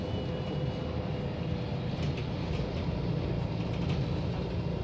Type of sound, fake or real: real